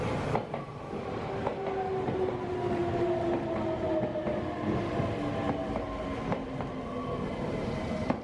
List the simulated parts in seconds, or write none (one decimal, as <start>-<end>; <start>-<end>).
none